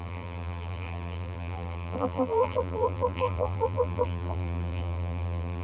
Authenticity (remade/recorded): remade